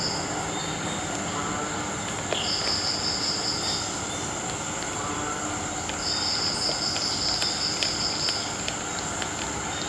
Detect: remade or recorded recorded